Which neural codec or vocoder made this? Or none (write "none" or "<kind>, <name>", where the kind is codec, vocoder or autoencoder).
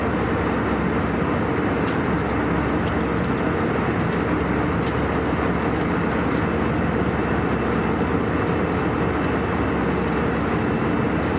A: none